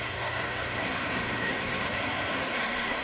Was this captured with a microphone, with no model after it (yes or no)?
no